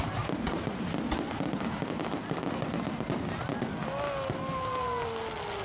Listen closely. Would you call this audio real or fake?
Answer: real